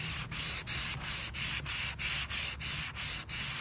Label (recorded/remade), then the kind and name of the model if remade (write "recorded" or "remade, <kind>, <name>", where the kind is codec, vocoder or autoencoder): recorded